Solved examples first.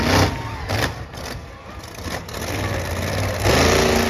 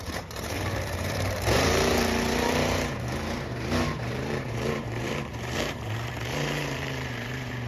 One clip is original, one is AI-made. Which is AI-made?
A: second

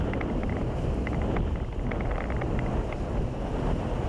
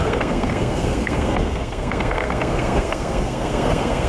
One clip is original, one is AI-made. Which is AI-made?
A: second